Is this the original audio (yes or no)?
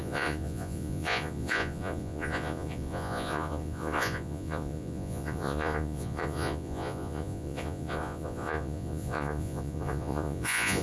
no